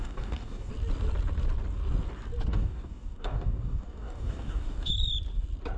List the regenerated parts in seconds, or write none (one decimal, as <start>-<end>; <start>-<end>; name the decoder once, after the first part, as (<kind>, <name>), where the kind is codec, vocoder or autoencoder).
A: 0.0-0.7 (codec, DAC); 2.5-4.9